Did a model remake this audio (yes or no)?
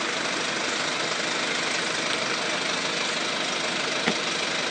no